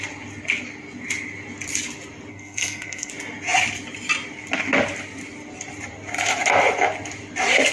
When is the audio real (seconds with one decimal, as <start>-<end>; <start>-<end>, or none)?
0.0-2.3; 3.1-7.7